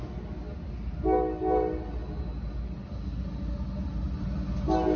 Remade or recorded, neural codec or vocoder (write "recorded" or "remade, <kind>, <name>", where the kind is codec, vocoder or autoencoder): recorded